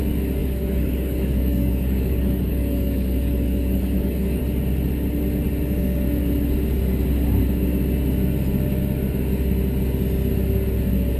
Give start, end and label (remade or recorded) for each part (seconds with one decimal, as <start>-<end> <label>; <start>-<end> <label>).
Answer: 0.0-0.4 recorded; 0.4-4.4 remade; 4.4-11.2 recorded